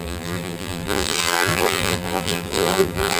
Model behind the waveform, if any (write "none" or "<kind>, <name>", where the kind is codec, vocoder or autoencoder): vocoder, BigVGAN v2